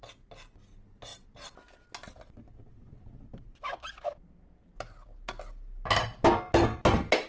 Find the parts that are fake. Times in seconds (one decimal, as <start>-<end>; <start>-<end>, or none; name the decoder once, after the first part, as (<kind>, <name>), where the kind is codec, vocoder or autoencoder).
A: none